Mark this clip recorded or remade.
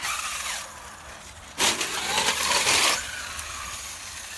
recorded